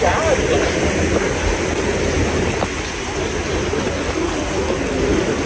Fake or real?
real